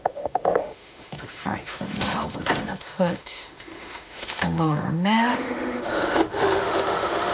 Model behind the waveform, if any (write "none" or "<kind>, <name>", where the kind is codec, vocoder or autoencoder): autoencoder, DAC-VAE